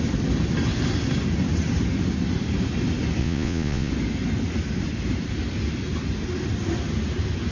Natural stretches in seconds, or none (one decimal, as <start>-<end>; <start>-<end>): 0.0-3.2; 3.9-7.5